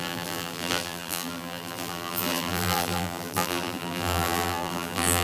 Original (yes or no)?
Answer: no